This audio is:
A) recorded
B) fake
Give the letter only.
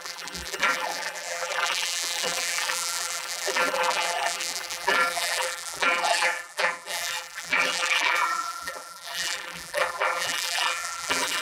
B